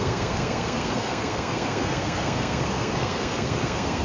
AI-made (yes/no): yes